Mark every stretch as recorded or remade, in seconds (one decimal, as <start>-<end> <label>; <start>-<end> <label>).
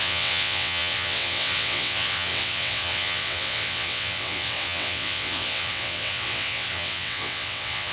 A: 0.0-7.9 remade